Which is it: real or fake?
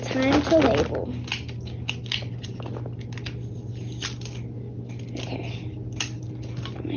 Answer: real